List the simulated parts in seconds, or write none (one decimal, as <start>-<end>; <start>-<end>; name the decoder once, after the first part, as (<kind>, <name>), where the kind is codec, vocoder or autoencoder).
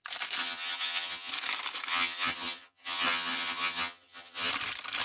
0.4-1.3 (vocoder, HiFi-GAN); 1.9-4.5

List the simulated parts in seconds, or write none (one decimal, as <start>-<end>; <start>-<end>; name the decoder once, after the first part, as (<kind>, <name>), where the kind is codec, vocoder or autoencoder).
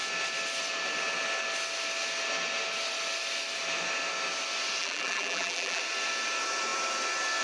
4.8-5.8 (vocoder, BigVGAN v2)